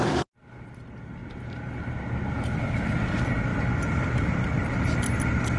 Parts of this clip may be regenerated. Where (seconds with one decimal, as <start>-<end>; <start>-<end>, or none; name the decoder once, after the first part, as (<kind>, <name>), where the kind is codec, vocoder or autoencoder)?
1.2-1.8 (vocoder, BigVGAN v2); 3.5-4.5